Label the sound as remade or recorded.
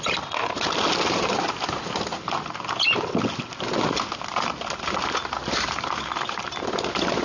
recorded